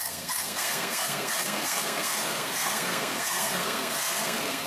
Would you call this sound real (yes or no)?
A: no